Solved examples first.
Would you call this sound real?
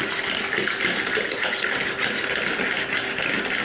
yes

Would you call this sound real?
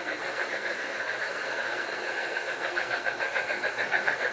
no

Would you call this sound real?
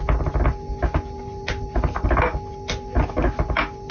yes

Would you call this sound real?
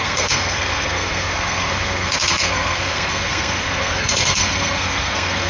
no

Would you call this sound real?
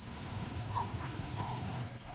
no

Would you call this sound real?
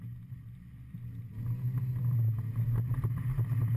yes